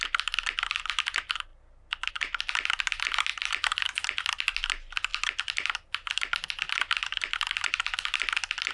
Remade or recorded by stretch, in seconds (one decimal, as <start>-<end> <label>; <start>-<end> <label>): 0.0-3.3 recorded; 3.3-3.9 remade; 3.9-8.7 recorded

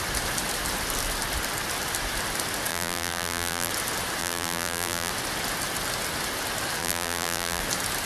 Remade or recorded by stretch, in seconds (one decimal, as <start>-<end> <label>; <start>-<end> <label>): 0.0-2.7 recorded; 2.7-3.7 remade; 3.7-4.2 recorded; 4.2-5.1 remade; 5.1-6.8 recorded; 6.8-7.6 remade; 7.6-8.1 recorded

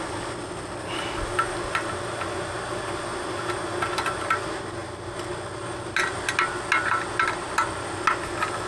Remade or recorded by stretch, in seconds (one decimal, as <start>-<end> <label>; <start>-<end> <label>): 0.0-8.7 recorded

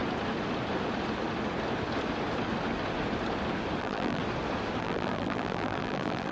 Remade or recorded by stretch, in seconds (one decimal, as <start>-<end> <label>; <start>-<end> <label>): 0.0-3.8 recorded; 3.8-4.2 remade; 4.2-4.8 recorded; 4.8-6.3 remade

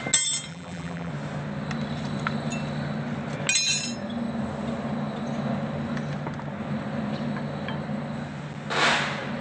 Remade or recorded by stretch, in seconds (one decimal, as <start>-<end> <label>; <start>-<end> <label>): 0.0-0.5 recorded; 0.5-1.1 remade; 1.1-9.4 recorded